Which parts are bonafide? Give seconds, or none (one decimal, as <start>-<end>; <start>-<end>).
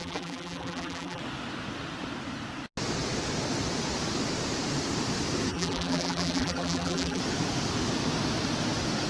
1.2-5.5; 7.2-9.1